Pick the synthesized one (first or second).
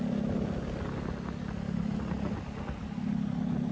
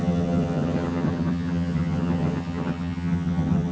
second